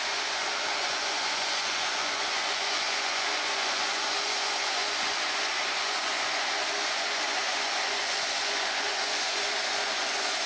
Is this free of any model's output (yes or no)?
no